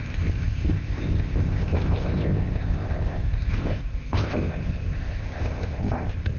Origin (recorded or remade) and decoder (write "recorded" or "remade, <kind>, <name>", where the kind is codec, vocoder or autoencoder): remade, codec, ZipCodec